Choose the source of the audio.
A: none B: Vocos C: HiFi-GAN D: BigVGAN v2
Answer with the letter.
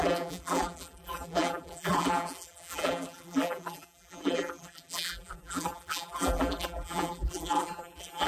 D